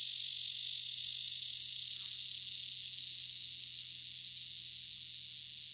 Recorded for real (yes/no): yes